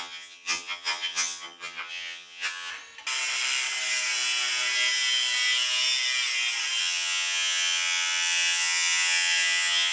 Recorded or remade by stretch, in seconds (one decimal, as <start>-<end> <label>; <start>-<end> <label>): 0.0-2.7 remade; 2.7-6.8 recorded; 6.8-9.9 remade